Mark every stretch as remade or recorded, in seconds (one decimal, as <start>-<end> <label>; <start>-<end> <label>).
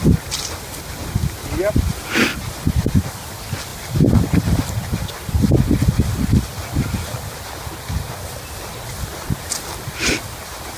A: 0.0-2.3 recorded; 2.3-3.1 remade; 3.1-10.8 recorded